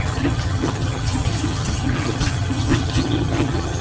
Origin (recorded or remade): remade